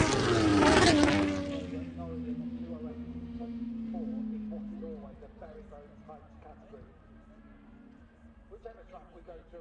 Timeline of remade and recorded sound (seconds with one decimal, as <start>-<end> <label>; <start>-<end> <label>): 0.0-2.9 recorded; 2.9-3.7 remade; 3.7-9.6 recorded